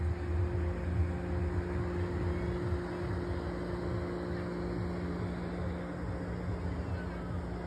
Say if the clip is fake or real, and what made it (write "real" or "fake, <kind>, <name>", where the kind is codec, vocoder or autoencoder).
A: real